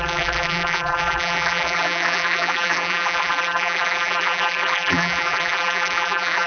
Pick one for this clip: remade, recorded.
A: remade